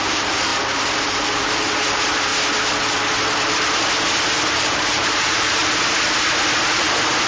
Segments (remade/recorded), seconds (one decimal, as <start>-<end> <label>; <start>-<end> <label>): 0.0-0.5 remade; 0.5-1.0 recorded; 1.0-2.3 remade; 2.3-4.4 recorded; 4.4-5.6 remade; 5.6-6.7 recorded; 6.7-7.3 remade